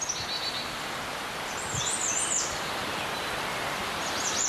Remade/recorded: recorded